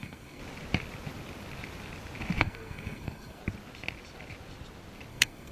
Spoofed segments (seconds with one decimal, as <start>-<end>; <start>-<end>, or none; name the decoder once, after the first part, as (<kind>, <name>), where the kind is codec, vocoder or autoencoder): 0.0-0.4 (codec, SNAC); 2.4-3.4; 5.1-5.5